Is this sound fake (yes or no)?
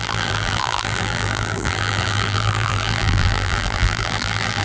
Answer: yes